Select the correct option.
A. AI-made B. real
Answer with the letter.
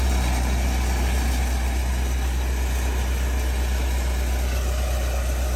B